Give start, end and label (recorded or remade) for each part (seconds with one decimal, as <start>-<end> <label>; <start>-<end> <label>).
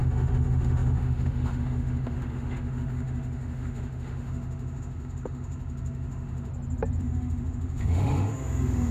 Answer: 0.0-6.5 remade; 6.5-7.0 recorded; 7.0-8.9 remade